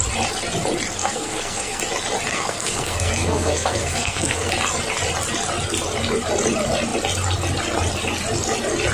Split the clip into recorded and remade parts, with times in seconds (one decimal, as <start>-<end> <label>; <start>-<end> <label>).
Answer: 0.0-1.0 recorded; 1.0-1.8 remade; 1.8-2.3 recorded; 2.3-4.5 remade; 4.5-8.9 recorded